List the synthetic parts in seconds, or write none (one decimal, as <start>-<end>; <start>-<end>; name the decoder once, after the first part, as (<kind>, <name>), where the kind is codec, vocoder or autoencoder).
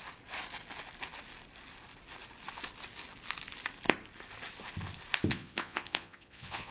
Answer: 5.3-6.7 (vocoder, Vocos)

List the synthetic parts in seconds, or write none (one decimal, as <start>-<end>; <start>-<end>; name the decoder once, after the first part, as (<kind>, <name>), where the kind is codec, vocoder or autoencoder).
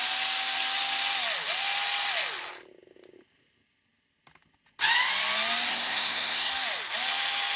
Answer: 5.7-6.5 (codec, SNAC)